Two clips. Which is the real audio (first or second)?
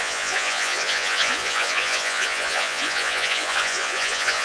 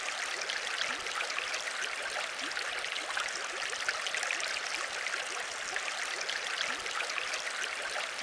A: second